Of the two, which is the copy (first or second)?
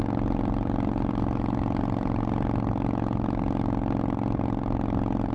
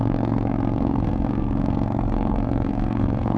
second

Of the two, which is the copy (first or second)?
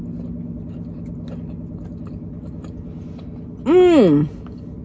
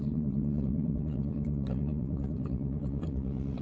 second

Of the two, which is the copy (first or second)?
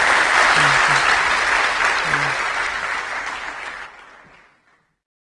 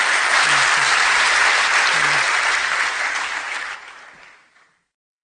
second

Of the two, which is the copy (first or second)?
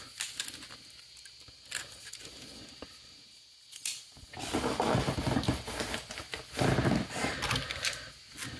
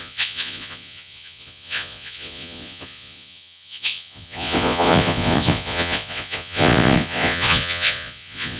second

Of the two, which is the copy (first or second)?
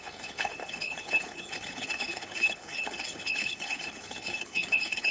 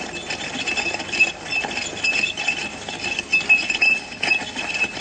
first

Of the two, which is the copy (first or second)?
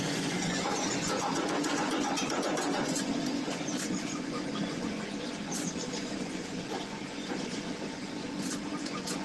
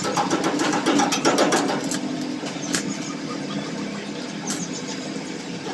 first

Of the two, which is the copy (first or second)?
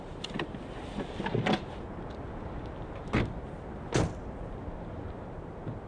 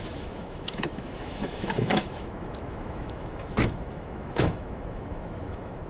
second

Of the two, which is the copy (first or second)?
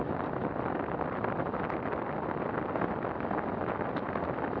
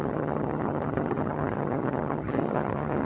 second